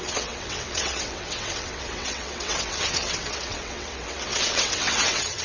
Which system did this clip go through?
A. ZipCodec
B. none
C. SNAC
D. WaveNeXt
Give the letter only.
D